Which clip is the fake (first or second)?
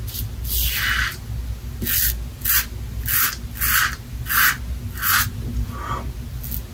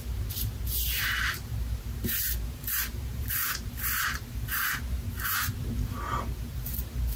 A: second